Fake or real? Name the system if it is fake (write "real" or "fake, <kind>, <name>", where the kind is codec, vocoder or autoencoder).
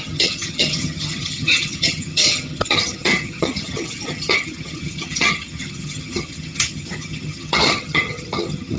fake, vocoder, HiFi-GAN